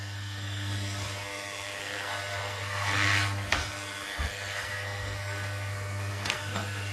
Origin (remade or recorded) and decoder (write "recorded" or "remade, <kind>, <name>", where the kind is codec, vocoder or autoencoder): remade, codec, SNAC